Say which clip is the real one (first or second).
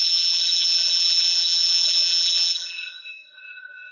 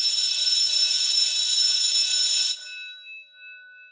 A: second